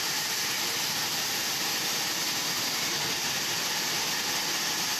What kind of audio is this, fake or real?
fake